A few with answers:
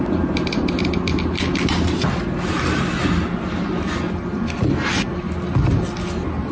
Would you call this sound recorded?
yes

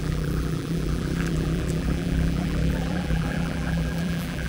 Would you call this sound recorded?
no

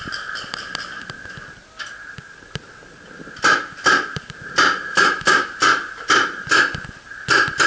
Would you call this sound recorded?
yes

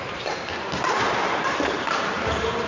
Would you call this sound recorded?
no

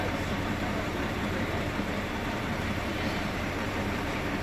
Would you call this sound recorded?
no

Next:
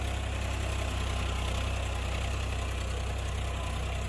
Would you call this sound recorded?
yes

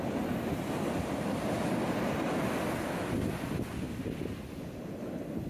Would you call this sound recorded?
yes